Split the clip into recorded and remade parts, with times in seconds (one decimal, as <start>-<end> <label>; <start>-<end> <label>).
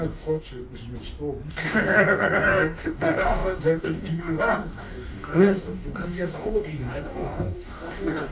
0.0-0.6 remade; 0.6-1.5 recorded; 1.5-8.3 remade